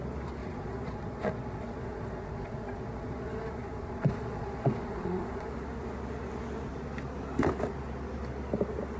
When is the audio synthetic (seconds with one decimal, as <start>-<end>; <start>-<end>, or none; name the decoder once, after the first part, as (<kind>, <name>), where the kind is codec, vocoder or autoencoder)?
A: 0.4-5.5 (vocoder, Vocos)